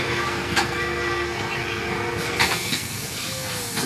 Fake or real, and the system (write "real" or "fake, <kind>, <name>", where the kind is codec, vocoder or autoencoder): fake, codec, SNAC